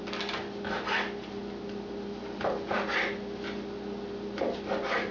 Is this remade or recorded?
recorded